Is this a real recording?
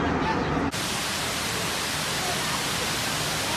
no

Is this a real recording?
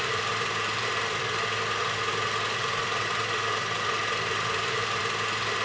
no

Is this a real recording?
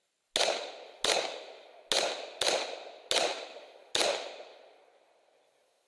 yes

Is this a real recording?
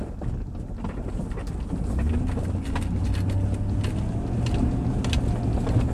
yes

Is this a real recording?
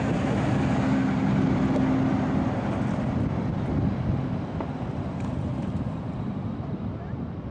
yes